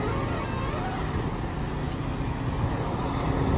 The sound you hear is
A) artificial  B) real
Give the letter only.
B